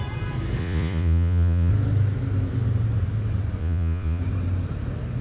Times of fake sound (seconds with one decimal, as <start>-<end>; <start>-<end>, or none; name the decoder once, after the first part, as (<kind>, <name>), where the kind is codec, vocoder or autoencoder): 0.6-1.7 (vocoder, Vocos); 3.6-4.2